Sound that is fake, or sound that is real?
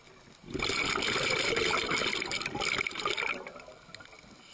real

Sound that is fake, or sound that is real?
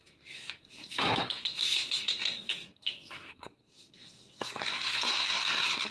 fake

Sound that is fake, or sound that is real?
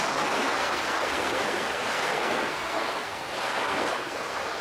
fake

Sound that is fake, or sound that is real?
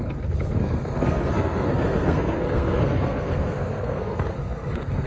fake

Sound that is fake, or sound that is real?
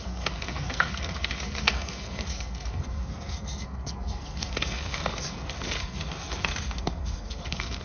fake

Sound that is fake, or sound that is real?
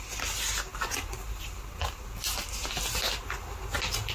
real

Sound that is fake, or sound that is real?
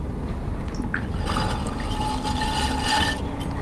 real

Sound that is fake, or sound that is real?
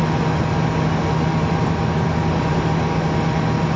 real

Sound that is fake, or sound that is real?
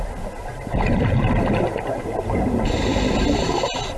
real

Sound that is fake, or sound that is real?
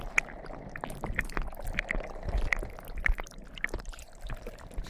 real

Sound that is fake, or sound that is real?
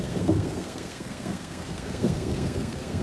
fake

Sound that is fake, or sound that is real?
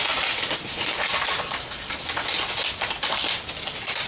real